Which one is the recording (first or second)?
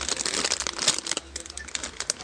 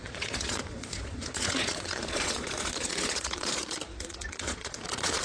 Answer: first